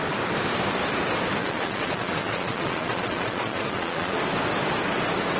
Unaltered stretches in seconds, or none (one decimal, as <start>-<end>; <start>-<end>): 0.0-1.4; 4.2-5.4